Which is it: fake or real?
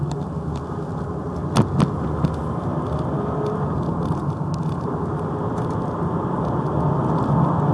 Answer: real